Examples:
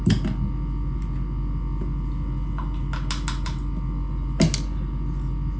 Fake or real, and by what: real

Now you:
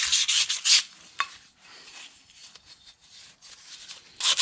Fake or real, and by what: real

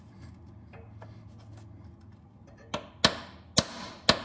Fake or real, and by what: real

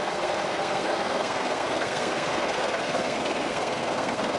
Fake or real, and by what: fake, codec, SNAC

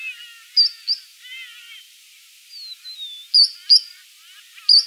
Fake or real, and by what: real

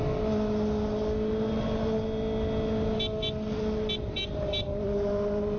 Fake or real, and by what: real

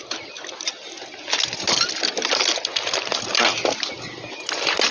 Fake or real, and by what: real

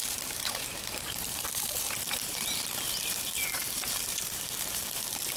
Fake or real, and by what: fake, vocoder, BigVGAN v2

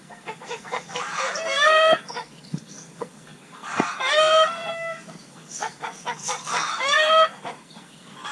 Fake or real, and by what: fake, codec, SNAC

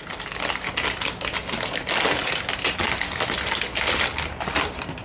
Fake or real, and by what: real